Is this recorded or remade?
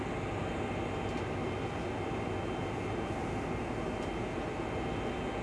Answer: recorded